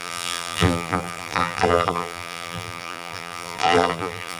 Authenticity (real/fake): fake